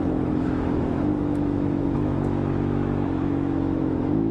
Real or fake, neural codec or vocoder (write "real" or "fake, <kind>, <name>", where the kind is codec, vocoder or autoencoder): fake, autoencoder, DAC-VAE